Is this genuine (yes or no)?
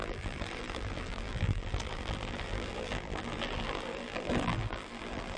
no